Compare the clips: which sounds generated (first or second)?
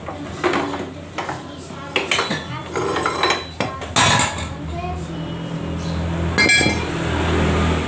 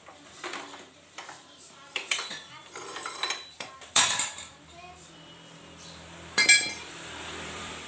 second